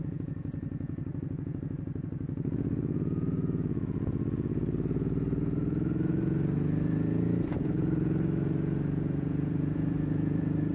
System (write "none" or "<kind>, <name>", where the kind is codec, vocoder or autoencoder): vocoder, Vocos